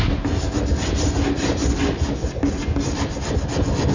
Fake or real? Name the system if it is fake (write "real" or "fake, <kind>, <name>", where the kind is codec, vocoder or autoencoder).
real